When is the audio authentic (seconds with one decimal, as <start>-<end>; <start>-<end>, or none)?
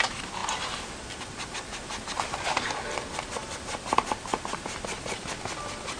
0.0-3.4; 5.3-6.0